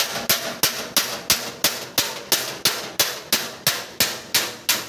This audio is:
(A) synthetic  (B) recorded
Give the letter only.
B